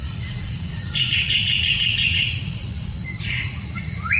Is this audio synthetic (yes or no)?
yes